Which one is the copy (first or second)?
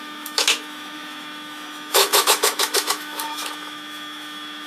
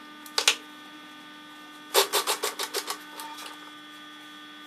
first